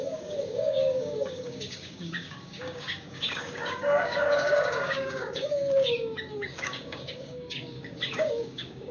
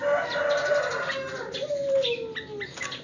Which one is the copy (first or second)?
first